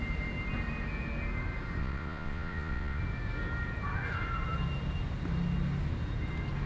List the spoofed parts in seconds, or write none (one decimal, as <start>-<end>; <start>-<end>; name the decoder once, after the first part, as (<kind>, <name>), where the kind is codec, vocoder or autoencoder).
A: 1.8-3.0 (vocoder, Vocos)